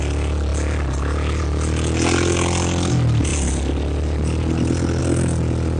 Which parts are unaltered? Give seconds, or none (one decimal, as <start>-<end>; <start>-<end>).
0.0-5.8